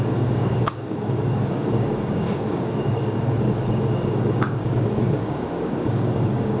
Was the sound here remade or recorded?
remade